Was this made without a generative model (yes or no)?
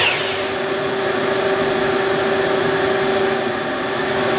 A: yes